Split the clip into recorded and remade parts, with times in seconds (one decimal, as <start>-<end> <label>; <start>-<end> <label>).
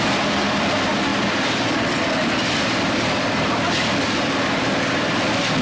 0.0-5.6 recorded